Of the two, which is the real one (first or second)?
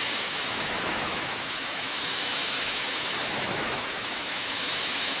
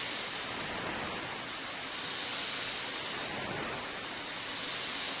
second